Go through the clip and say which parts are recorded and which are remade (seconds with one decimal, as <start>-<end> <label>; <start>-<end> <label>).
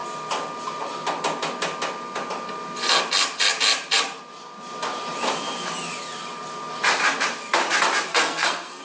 0.0-8.1 recorded; 8.1-8.8 remade